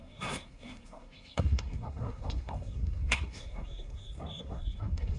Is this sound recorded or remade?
remade